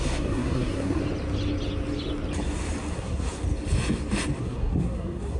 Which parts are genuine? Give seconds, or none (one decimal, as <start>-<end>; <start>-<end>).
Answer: 1.0-2.9; 3.4-4.4